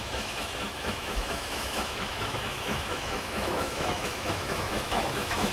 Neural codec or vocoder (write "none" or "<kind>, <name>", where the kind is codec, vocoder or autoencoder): autoencoder, DAC-VAE